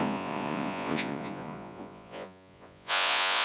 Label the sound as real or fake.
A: fake